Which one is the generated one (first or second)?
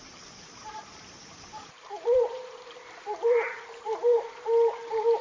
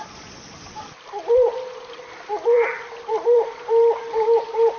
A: first